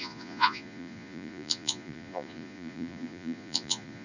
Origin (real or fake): fake